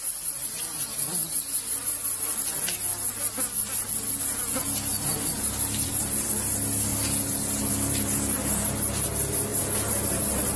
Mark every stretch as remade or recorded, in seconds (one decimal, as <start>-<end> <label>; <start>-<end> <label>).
0.0-10.6 recorded